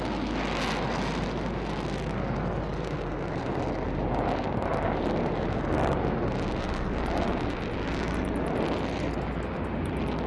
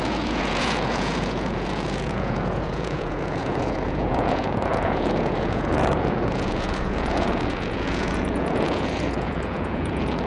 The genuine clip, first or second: first